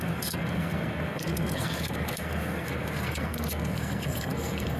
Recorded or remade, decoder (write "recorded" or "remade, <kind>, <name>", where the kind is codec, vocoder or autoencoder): remade, codec, SNAC